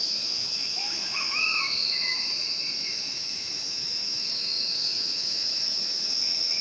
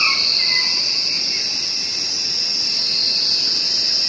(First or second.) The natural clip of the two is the second